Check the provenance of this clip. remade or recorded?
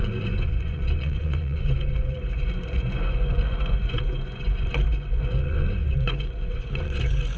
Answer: remade